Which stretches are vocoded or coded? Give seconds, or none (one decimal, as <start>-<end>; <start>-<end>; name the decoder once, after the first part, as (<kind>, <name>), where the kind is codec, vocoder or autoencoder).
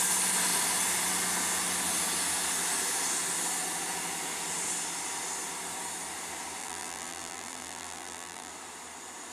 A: 6.6-8.5 (vocoder, BigVGAN v2)